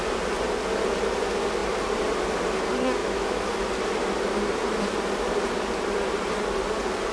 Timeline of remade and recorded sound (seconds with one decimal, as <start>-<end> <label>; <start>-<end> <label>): 0.0-3.0 recorded; 3.0-3.5 remade; 3.5-7.1 recorded